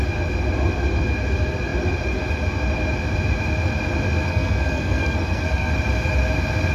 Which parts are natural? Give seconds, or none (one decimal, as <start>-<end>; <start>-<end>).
0.0-4.3; 5.7-6.7